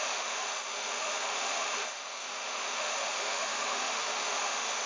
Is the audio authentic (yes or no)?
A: no